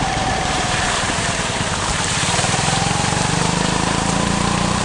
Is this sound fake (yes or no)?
yes